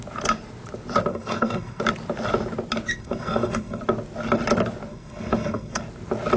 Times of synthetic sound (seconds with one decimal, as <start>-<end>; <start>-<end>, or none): 1.1-1.8; 2.9-3.8; 4.9-5.8